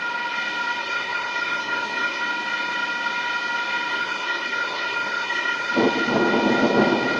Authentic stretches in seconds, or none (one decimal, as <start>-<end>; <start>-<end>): 0.0-0.8; 2.2-3.9; 5.7-7.2